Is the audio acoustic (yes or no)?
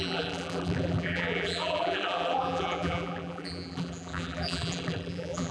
no